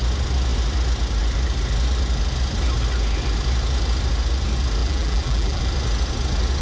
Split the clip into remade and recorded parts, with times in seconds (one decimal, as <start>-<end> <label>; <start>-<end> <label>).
0.0-4.8 recorded; 4.8-5.6 remade; 5.6-6.6 recorded